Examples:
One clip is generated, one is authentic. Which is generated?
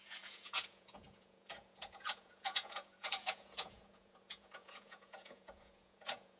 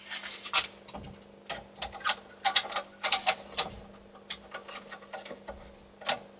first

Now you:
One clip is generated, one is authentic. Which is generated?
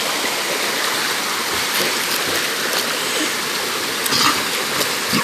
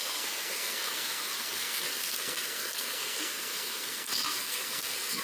second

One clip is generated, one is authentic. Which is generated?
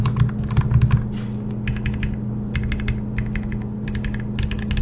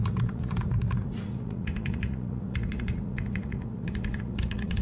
second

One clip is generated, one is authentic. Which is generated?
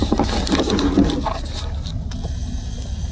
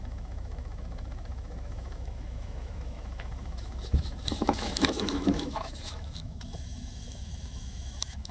second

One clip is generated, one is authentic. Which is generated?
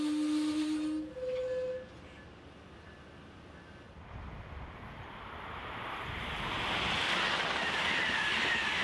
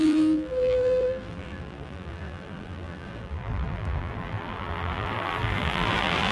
second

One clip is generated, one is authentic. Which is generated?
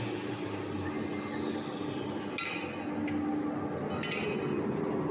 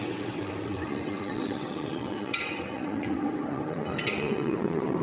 second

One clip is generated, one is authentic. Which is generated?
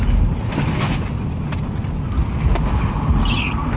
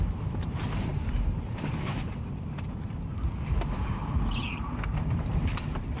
second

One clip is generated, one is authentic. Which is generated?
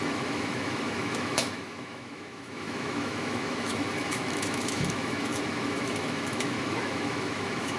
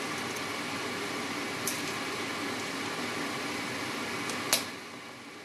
first